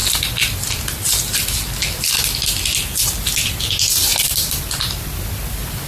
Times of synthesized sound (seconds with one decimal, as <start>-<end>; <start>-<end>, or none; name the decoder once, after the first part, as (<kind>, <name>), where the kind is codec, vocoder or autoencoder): 4.1-4.6 (vocoder, BigVGAN v2)

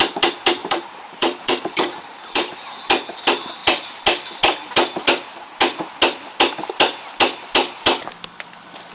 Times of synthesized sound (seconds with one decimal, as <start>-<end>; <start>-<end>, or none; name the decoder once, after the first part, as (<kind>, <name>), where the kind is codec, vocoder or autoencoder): 0.6-2.7 (vocoder, BigVGAN v2)

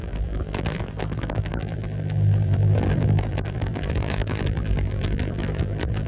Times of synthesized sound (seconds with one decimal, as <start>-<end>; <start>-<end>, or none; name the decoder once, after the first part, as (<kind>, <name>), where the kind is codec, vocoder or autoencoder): 0.0-6.1 (vocoder, BigVGAN v2)